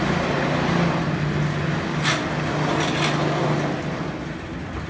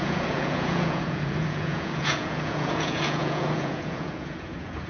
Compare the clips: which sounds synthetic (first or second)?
second